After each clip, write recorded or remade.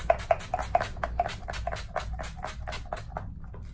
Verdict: recorded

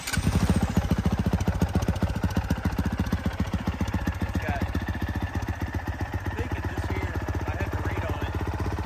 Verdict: recorded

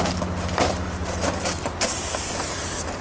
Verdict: recorded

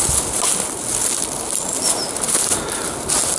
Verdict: recorded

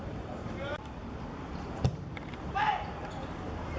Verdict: remade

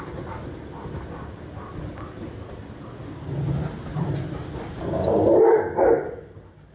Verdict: recorded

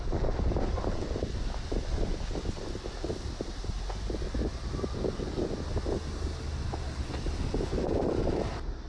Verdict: recorded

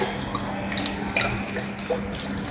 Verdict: recorded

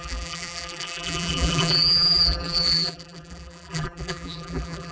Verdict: remade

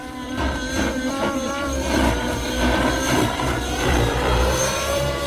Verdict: remade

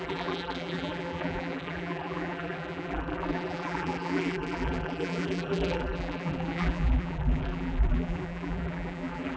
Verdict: remade